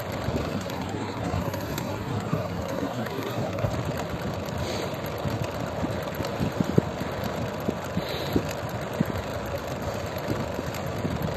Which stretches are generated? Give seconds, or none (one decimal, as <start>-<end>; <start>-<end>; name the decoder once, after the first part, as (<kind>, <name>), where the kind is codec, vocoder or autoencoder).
0.4-3.7 (codec, SNAC)